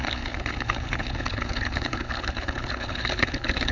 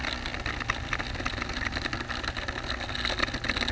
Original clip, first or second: second